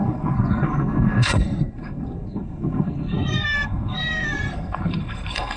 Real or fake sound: fake